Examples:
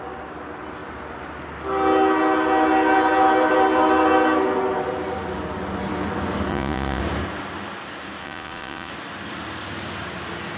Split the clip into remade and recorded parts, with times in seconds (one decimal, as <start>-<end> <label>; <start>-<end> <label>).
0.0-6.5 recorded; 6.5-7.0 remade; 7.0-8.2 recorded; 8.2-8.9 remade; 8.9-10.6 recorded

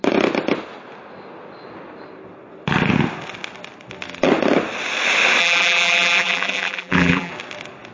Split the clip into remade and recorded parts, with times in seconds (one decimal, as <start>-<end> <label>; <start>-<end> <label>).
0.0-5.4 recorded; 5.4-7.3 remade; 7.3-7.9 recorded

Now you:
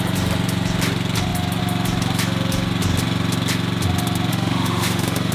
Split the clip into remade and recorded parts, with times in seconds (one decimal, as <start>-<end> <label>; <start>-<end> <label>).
0.0-4.3 recorded; 4.3-5.3 remade

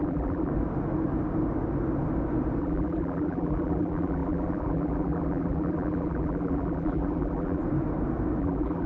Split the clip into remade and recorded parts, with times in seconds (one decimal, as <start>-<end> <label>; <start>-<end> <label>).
0.0-0.5 remade; 0.5-2.6 recorded; 2.6-7.6 remade; 7.6-8.4 recorded; 8.4-8.9 remade

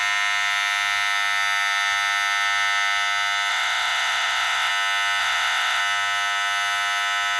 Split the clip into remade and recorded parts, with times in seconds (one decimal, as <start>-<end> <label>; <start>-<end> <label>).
0.0-3.5 recorded; 3.5-4.7 remade; 4.7-5.2 recorded; 5.2-5.8 remade; 5.8-7.4 recorded

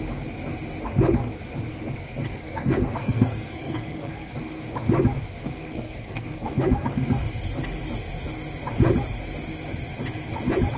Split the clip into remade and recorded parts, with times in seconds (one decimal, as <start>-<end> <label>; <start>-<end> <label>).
0.0-2.4 recorded; 2.4-4.3 remade; 4.3-5.4 recorded; 5.4-6.9 remade; 6.9-10.8 recorded

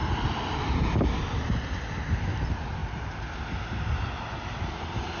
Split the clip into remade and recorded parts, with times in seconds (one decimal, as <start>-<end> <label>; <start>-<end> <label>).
0.0-5.2 recorded

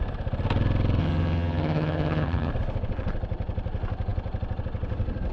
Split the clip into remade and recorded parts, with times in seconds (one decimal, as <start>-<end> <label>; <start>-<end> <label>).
0.0-1.0 recorded; 1.0-2.5 remade; 2.5-5.3 recorded